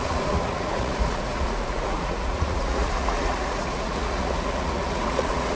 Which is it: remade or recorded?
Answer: remade